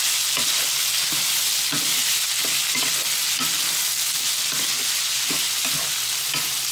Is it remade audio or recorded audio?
recorded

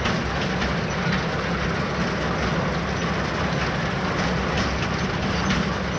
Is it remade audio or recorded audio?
recorded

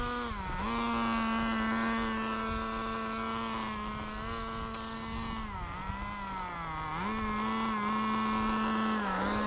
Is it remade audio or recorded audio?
recorded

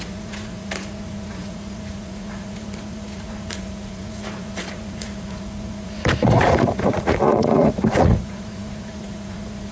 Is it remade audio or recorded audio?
remade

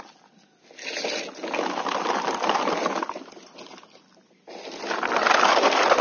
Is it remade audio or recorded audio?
recorded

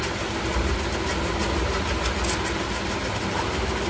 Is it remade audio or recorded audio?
recorded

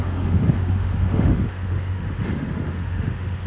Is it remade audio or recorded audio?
remade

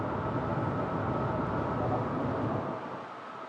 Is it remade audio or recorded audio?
recorded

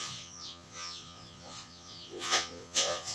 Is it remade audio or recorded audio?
remade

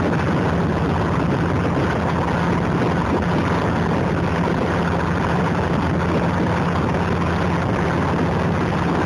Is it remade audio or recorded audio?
recorded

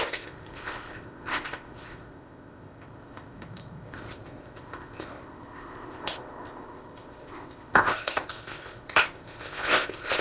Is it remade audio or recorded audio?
remade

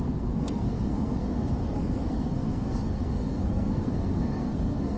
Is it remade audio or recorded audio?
remade